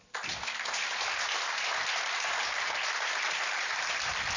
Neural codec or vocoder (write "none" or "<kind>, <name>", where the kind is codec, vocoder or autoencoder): none